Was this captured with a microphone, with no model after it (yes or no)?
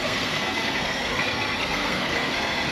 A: no